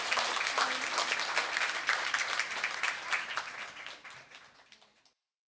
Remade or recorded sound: recorded